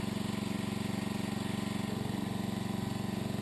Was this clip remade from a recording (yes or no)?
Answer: no